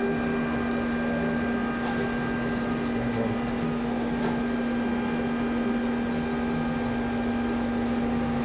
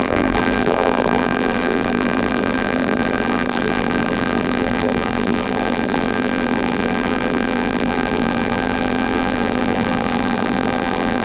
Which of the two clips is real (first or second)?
first